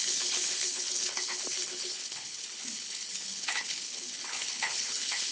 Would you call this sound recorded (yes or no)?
no